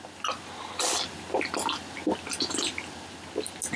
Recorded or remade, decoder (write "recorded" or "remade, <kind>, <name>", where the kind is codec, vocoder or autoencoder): recorded